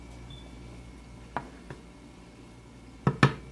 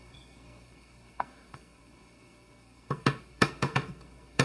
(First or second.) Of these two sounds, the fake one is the second